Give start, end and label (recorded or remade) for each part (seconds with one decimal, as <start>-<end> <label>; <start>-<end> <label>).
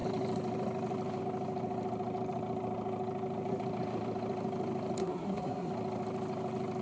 0.0-5.0 recorded; 5.0-5.7 remade; 5.7-6.8 recorded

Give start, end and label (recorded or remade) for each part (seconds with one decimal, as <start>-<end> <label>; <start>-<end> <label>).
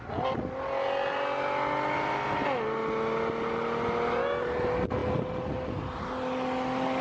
0.0-7.0 recorded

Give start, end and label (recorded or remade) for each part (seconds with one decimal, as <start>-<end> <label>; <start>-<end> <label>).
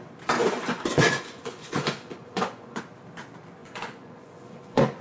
0.0-0.4 recorded; 0.4-2.8 remade; 2.8-3.6 recorded; 3.6-5.0 remade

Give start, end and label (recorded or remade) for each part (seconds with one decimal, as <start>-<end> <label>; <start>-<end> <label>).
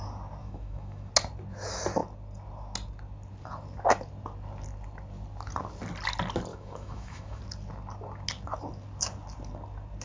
0.0-0.4 recorded; 0.4-1.1 remade; 1.1-6.5 recorded; 6.5-7.4 remade; 7.4-10.0 recorded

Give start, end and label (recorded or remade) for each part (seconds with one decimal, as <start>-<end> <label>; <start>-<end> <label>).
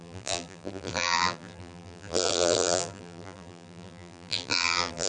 0.0-5.1 remade